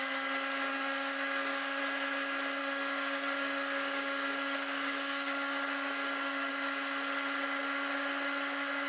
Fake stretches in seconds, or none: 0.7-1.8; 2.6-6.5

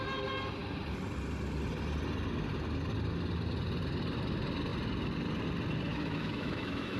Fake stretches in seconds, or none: 5.9-7.0